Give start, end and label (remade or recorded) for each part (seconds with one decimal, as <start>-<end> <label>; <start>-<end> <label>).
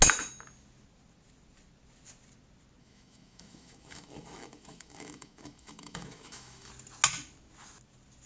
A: 0.0-2.8 recorded; 2.8-6.7 remade; 6.7-8.3 recorded